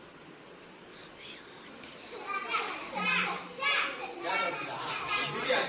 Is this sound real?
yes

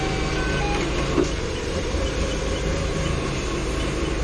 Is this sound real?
yes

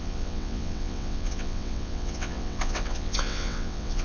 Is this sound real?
no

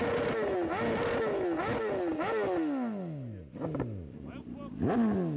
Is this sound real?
yes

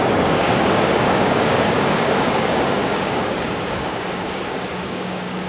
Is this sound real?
no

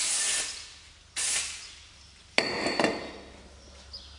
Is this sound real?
yes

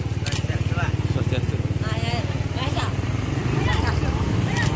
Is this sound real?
yes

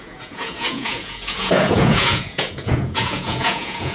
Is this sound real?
no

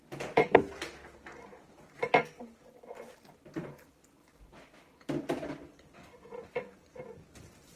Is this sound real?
yes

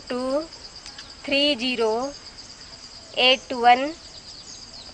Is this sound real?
yes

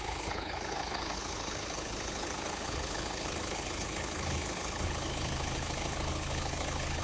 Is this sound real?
no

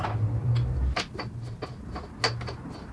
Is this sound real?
yes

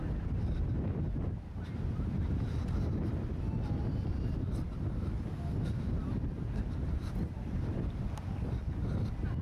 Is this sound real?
yes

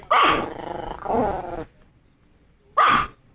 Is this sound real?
yes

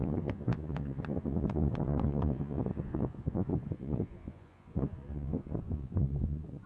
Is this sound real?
no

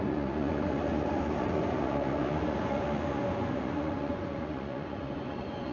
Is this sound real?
no